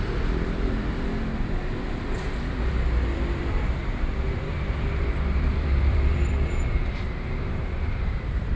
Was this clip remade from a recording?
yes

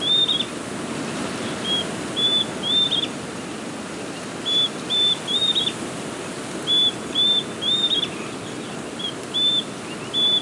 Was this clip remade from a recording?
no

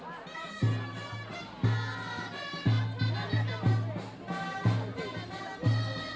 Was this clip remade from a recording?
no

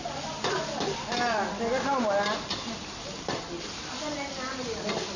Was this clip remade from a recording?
no